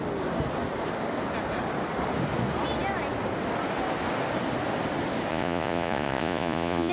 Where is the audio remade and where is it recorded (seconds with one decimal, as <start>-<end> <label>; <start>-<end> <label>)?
0.0-5.3 recorded; 5.3-6.9 remade